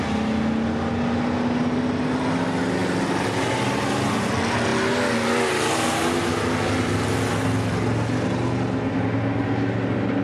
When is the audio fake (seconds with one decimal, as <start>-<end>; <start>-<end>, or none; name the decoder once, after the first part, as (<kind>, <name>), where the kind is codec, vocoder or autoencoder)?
none